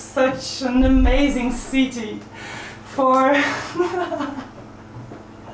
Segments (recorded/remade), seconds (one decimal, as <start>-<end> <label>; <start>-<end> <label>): 0.0-5.5 recorded